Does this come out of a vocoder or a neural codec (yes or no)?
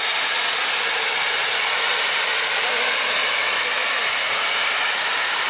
no